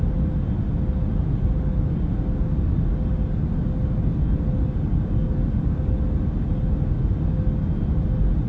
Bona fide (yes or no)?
yes